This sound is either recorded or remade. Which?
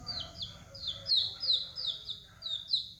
recorded